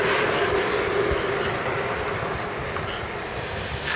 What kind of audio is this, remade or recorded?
recorded